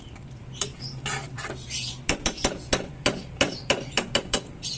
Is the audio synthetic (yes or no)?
yes